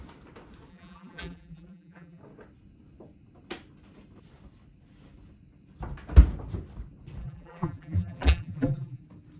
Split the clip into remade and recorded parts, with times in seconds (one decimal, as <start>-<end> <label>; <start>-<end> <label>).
0.0-0.7 recorded; 0.7-2.2 remade; 2.2-7.2 recorded; 7.2-9.0 remade; 9.0-9.4 recorded